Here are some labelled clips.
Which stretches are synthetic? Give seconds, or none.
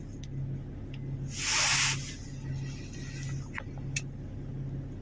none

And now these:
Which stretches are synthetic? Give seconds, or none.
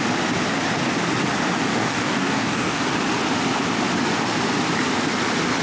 1.7-2.8 (codec, DAC)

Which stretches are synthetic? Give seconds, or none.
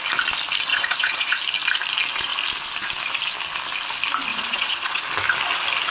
0.7-1.4 (vocoder, Vocos); 4.3-5.0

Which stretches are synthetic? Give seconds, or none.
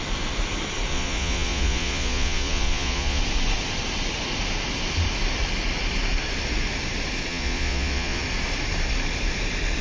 0.9-3.2 (vocoder, Vocos); 7.3-8.2